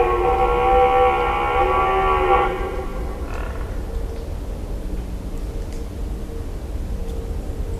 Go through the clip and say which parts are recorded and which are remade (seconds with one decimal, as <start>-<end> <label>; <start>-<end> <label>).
0.0-7.8 recorded